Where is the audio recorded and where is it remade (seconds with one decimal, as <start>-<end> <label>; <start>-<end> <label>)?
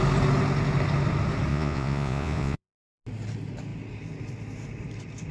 0.0-1.5 recorded; 1.5-3.0 remade; 3.0-5.3 recorded